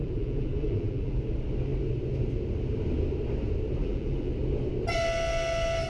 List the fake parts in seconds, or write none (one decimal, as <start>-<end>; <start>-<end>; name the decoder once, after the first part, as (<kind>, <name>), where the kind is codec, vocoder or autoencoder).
0.0-1.2 (vocoder, BigVGAN v2); 3.8-4.3